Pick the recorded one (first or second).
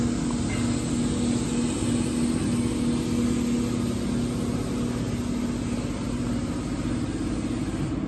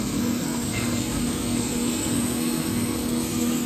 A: first